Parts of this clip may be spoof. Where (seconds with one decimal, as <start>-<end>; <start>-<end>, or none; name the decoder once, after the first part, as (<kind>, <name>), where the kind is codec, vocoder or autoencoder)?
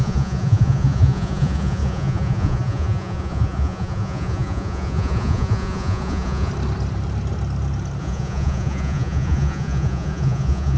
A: 0.0-6.5 (vocoder, Vocos); 8.0-10.8